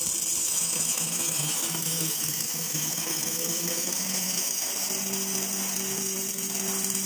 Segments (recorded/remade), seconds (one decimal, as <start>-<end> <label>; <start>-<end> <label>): 0.0-0.4 recorded; 0.4-4.7 remade; 4.7-7.1 recorded